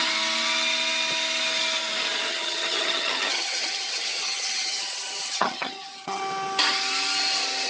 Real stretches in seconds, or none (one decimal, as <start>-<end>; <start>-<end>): 0.0-2.3; 6.2-7.7